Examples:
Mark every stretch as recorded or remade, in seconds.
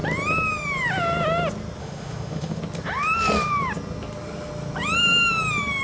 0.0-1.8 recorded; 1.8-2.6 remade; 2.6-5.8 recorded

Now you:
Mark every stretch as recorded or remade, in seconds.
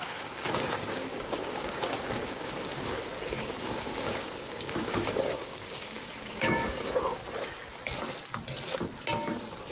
0.0-7.2 remade; 7.2-9.7 recorded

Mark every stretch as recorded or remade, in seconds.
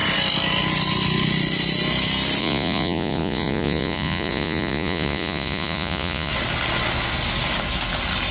0.0-2.4 recorded; 2.4-6.3 remade; 6.3-8.3 recorded